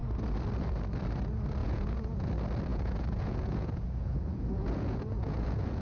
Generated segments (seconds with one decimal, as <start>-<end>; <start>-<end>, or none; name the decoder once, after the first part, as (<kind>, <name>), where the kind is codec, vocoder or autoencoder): 1.6-2.3 (vocoder, Vocos); 2.7-5.8